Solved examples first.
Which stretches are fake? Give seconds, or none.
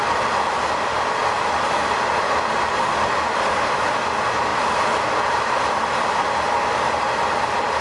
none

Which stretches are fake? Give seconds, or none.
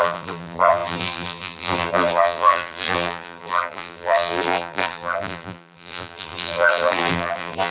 0.0-7.7 (vocoder, BigVGAN v2)